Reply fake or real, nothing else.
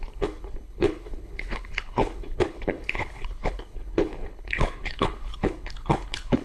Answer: fake